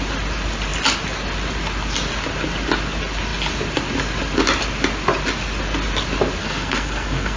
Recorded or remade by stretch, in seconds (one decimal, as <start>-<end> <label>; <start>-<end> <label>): 0.0-6.4 recorded; 6.4-7.4 remade